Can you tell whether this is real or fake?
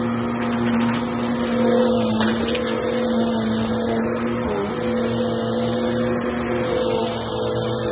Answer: real